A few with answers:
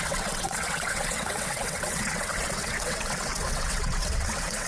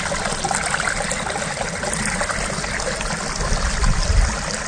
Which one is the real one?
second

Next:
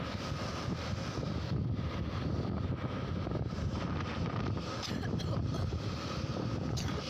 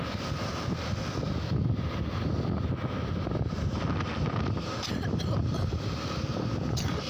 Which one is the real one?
second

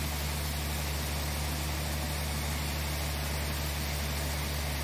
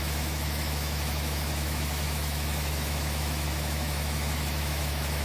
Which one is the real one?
first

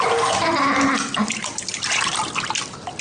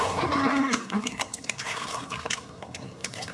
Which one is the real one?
first